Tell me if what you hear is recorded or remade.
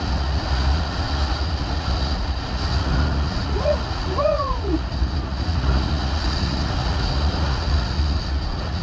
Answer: remade